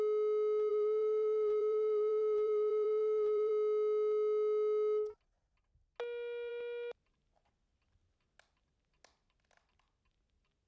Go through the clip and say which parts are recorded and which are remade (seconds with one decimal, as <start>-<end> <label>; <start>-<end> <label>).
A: 0.0-0.7 recorded; 0.7-3.5 remade; 3.5-10.7 recorded